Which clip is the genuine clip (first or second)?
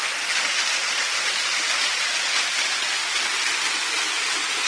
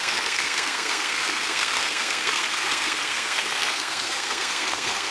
first